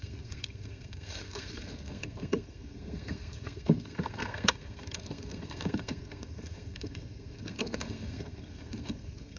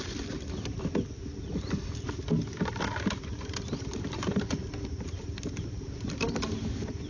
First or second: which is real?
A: second